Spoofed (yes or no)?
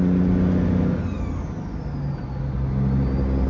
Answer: no